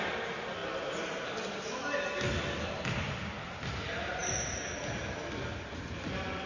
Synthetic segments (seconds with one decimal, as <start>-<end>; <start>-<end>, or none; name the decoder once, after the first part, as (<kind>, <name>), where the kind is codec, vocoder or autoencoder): none